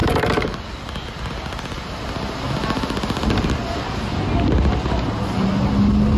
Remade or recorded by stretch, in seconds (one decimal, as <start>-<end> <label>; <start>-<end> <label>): 0.0-0.6 remade; 0.6-6.2 recorded